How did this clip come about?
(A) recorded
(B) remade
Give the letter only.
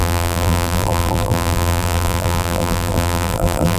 B